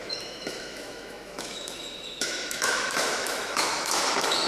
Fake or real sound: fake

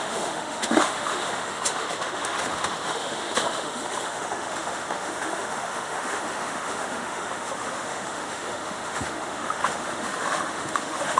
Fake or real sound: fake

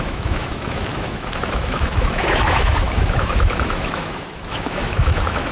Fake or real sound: fake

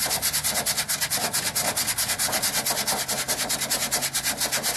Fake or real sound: real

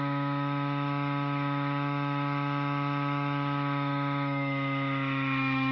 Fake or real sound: fake